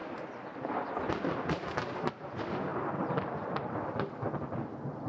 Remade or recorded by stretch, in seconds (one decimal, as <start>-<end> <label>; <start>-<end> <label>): 0.0-5.1 recorded

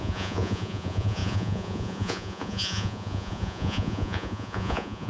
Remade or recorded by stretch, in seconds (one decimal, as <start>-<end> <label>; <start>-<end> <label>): 0.0-5.1 remade

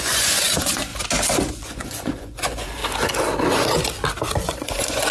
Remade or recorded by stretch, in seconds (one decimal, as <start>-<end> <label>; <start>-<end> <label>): 0.0-0.9 remade; 0.9-1.5 recorded; 1.5-2.8 remade; 2.8-4.4 recorded; 4.4-5.1 remade